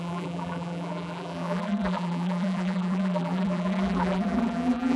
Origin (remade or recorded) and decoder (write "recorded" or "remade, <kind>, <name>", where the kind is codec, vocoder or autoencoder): remade, vocoder, BigVGAN v2